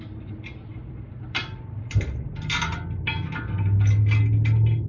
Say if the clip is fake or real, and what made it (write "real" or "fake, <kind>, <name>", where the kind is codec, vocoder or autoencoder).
real